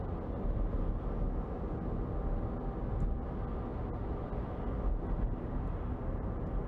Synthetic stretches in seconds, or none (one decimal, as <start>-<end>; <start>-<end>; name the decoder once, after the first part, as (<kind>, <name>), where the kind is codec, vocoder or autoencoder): none